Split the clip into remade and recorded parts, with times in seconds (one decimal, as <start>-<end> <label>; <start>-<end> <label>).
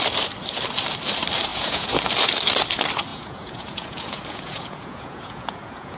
0.0-1.5 recorded; 1.5-2.0 remade; 2.0-3.1 recorded; 3.1-6.0 remade